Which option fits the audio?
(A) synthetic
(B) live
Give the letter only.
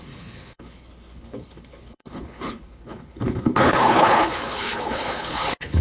A